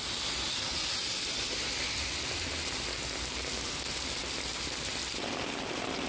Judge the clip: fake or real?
real